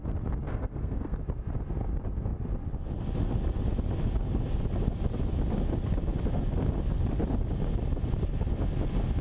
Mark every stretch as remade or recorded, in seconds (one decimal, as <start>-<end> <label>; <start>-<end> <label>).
0.0-0.5 recorded; 0.5-1.2 remade; 1.2-9.2 recorded